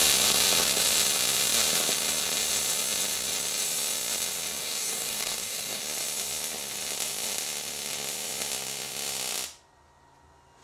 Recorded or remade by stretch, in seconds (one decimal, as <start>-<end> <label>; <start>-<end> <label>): 0.0-4.6 recorded; 4.6-5.8 remade; 5.8-10.6 recorded